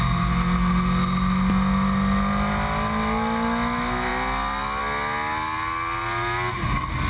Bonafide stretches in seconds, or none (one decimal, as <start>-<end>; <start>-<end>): 0.0-7.1